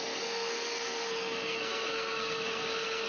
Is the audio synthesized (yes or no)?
yes